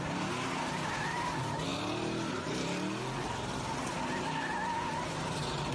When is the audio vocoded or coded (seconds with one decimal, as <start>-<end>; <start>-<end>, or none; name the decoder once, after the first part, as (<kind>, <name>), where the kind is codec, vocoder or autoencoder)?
none